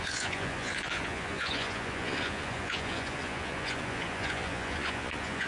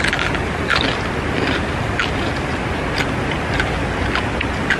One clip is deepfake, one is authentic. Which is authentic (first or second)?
second